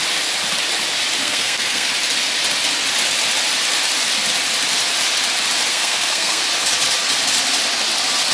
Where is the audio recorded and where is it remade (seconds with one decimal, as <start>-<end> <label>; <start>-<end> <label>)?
0.0-1.2 recorded; 1.2-1.9 remade; 1.9-5.7 recorded; 5.7-6.4 remade; 6.4-8.3 recorded